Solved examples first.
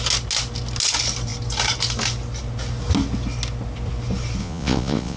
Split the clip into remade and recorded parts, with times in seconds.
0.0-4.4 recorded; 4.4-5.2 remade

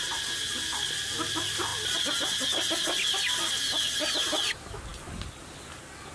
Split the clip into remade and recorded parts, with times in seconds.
0.0-6.1 recorded

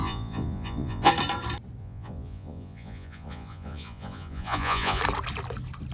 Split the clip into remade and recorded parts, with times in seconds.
0.0-1.1 remade; 1.1-1.8 recorded; 1.8-5.0 remade; 5.0-5.9 recorded

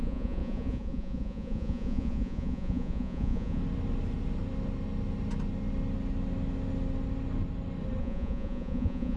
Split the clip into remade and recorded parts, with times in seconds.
0.0-3.6 remade; 3.6-8.0 recorded; 8.0-9.2 remade

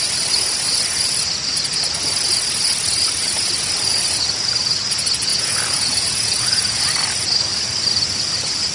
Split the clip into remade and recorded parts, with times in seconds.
0.0-5.3 recorded; 5.3-6.8 remade; 6.8-8.7 recorded

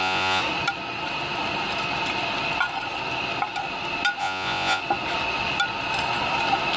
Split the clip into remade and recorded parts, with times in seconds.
0.0-0.4 remade; 0.4-4.2 recorded; 4.2-4.8 remade; 4.8-6.8 recorded

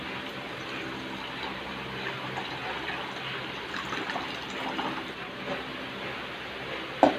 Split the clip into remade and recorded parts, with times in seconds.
0.0-7.2 recorded

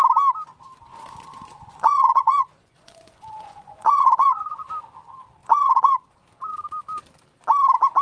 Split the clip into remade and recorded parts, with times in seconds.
0.0-0.9 recorded; 0.9-4.6 remade; 4.6-5.4 recorded; 5.4-6.2 remade; 6.2-8.0 recorded